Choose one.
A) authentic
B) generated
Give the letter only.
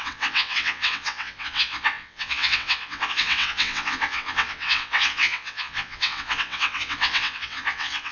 B